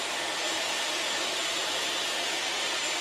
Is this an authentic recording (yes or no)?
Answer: yes